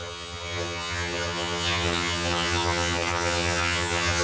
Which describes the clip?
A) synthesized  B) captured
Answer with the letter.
A